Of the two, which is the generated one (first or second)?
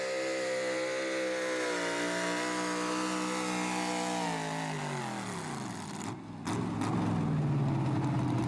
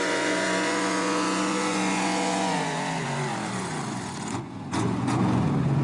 second